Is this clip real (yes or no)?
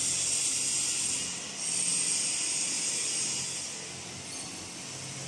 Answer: yes